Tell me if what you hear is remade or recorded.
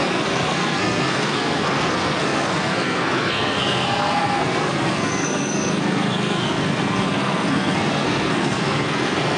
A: remade